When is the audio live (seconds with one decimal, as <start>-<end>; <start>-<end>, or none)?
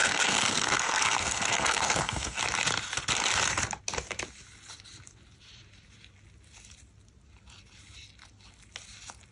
2.4-9.3